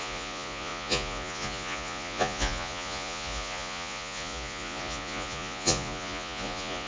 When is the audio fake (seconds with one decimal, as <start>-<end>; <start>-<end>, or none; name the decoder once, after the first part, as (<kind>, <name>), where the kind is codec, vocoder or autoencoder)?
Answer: 0.0-6.9 (vocoder, Vocos)